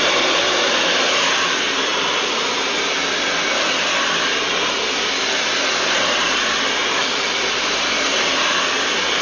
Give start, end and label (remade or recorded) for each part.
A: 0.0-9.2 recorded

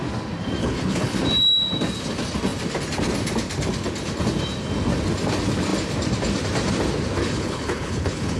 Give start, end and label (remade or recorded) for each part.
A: 0.0-0.6 recorded; 0.6-1.2 remade; 1.2-7.2 recorded; 7.2-8.4 remade

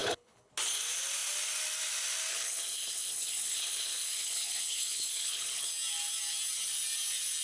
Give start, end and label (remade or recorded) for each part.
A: 0.0-0.5 remade; 0.5-2.3 recorded; 2.3-5.7 remade; 5.7-7.4 recorded

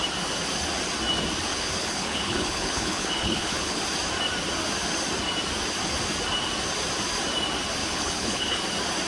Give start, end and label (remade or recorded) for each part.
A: 0.0-1.5 recorded; 1.5-3.8 remade; 3.8-7.8 recorded; 7.8-8.6 remade; 8.6-9.1 recorded

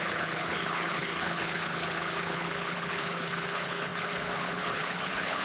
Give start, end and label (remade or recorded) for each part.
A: 0.0-5.4 remade